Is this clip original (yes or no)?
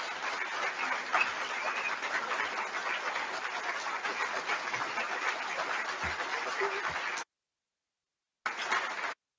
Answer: yes